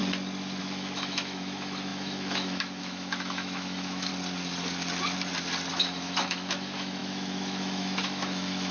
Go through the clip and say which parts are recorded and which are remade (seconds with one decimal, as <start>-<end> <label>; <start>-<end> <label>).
0.0-0.6 recorded; 0.6-4.1 remade; 4.1-5.7 recorded; 5.7-8.7 remade